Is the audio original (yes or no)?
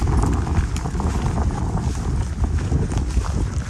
yes